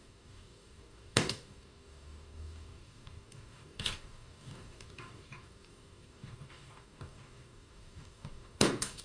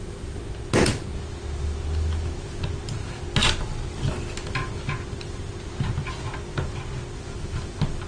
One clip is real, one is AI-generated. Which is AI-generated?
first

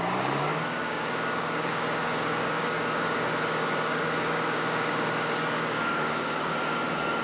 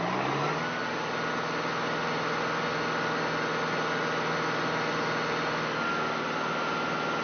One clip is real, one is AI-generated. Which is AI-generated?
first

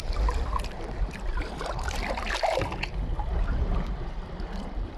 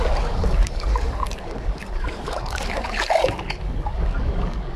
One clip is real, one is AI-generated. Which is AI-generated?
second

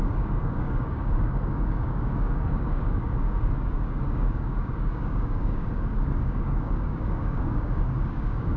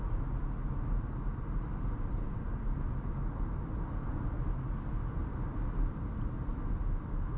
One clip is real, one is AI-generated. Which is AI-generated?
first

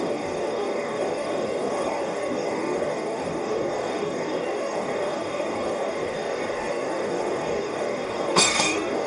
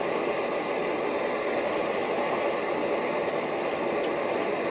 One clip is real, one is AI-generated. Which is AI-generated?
first